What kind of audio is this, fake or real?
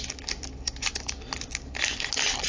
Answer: real